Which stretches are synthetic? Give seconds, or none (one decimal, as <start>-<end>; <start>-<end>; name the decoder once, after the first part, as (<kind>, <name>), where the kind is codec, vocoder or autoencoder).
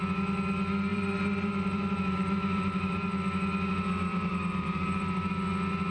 0.9-3.1 (vocoder, BigVGAN v2); 4.1-5.3